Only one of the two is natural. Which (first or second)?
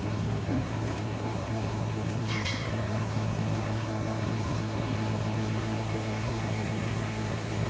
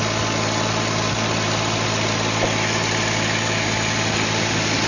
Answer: second